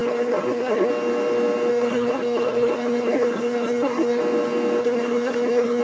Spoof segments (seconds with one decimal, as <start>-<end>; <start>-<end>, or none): 0.0-0.9; 1.7-4.2; 4.8-5.8